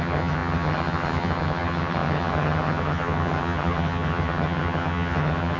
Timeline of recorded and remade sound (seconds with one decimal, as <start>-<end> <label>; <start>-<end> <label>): 0.0-5.6 remade

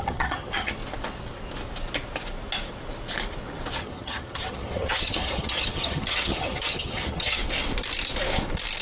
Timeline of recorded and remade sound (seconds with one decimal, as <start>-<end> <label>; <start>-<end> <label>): 0.0-0.8 remade; 0.8-3.8 recorded; 3.8-7.4 remade; 7.4-8.8 recorded

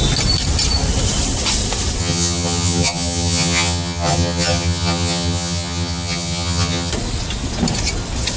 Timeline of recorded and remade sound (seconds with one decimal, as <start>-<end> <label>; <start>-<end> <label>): 0.0-2.0 recorded; 2.0-6.9 remade; 6.9-8.4 recorded

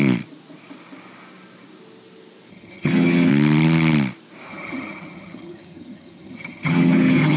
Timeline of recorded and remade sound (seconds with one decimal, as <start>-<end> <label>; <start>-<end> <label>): 0.0-2.5 recorded; 2.5-3.3 remade; 3.3-4.5 recorded; 4.5-7.4 remade

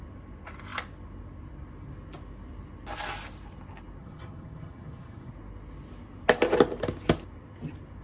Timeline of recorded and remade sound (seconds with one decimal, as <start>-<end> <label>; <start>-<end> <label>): 0.0-4.0 recorded; 4.0-5.3 remade; 5.3-8.0 recorded

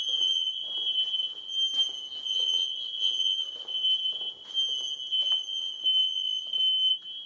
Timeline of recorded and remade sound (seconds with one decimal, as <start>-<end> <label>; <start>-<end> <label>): 0.0-7.3 recorded

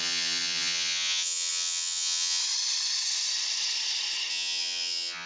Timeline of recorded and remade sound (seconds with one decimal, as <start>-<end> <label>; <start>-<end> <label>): 0.0-2.4 remade; 2.4-4.3 recorded; 4.3-5.3 remade